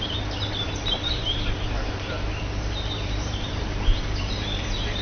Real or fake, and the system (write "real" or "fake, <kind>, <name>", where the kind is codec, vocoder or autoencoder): fake, vocoder, BigVGAN v2